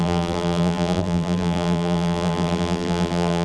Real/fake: fake